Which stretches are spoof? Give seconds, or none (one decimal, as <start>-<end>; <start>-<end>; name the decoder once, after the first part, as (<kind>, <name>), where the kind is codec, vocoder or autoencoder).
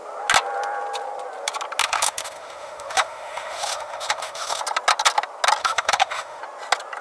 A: 1.8-4.6 (autoencoder, DAC-VAE); 5.6-6.4